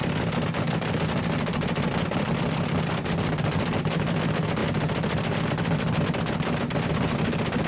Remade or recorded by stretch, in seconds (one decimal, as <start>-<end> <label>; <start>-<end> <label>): 0.0-7.7 recorded